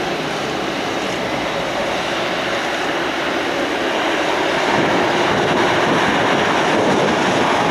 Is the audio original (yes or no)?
yes